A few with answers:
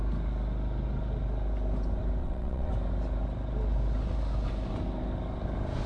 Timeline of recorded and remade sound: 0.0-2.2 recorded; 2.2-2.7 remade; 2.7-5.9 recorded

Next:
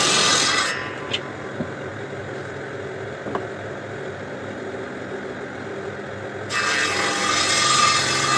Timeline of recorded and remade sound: 0.0-8.4 recorded